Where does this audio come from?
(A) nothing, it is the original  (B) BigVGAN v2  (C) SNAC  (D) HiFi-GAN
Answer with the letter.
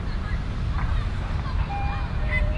B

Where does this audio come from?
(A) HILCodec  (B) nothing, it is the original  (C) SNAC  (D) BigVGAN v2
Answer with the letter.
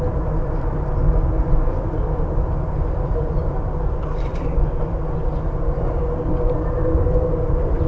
B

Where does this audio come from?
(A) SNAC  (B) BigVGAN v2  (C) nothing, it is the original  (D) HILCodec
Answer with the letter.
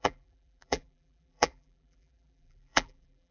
B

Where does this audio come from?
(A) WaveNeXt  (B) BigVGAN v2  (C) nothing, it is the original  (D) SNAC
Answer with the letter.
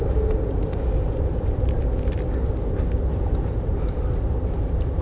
C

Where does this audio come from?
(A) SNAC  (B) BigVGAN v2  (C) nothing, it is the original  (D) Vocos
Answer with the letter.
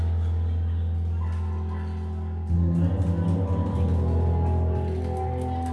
C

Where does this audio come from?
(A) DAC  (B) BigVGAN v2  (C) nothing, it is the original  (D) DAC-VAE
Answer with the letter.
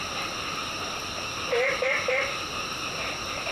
C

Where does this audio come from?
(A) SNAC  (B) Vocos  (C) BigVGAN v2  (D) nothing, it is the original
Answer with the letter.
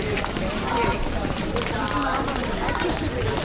C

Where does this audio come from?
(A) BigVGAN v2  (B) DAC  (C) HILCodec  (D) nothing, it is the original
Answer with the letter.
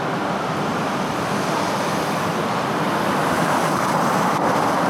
A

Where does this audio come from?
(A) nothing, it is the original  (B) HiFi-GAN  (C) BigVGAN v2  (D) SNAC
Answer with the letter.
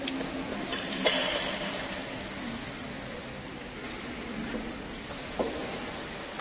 C